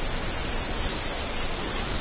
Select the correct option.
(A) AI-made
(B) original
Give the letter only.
B